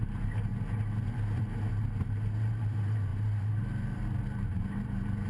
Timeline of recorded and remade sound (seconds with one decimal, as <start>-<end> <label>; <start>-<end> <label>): 0.0-0.5 remade; 0.5-1.7 recorded; 1.7-5.3 remade